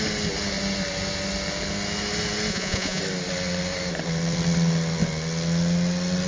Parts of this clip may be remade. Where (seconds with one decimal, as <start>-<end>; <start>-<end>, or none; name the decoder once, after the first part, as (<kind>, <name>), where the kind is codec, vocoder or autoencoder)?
2.5-3.0 (vocoder, Vocos)